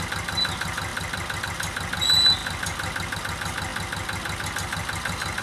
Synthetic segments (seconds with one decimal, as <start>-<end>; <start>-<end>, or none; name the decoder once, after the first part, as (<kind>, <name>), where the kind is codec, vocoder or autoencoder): none